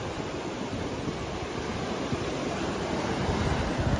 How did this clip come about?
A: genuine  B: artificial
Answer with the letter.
A